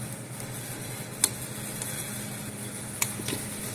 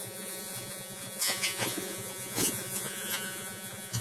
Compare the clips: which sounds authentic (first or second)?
first